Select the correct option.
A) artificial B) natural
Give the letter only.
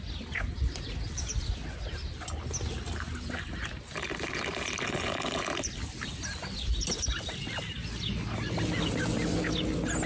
B